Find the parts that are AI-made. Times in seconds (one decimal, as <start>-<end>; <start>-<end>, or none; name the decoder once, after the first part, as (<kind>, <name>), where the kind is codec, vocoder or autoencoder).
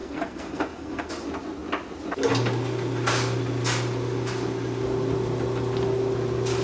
0.0-1.1 (codec, SNAC)